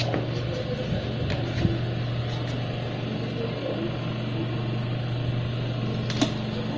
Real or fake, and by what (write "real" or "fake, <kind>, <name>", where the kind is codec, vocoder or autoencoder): real